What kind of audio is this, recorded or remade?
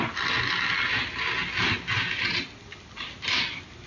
recorded